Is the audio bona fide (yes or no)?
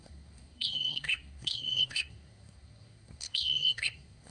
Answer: no